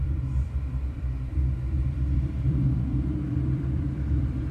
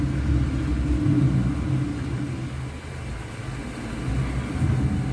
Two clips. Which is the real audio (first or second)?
second